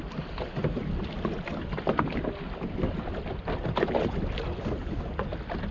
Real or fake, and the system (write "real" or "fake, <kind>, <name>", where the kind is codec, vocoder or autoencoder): real